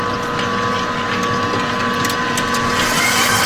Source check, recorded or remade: recorded